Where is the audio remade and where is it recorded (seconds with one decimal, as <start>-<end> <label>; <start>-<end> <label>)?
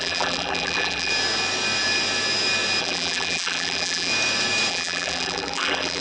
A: 0.0-1.1 remade; 1.1-2.8 recorded; 2.8-4.1 remade; 4.1-4.7 recorded; 4.7-6.0 remade